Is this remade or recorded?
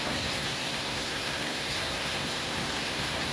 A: remade